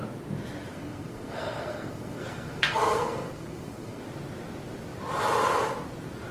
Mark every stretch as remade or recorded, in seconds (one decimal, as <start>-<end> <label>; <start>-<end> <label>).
0.0-0.7 recorded; 0.7-4.0 remade; 4.0-6.3 recorded